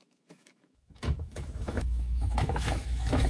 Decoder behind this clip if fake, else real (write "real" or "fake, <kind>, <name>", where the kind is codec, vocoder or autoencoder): fake, autoencoder, DAC-VAE